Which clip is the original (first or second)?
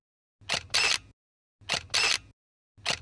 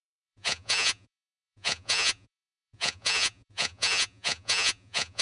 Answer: first